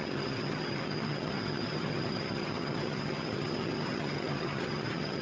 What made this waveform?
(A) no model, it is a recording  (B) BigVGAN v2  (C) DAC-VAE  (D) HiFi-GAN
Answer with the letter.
D